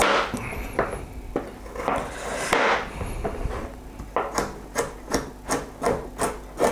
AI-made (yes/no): no